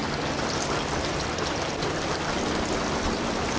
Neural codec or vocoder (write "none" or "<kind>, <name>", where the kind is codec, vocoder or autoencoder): none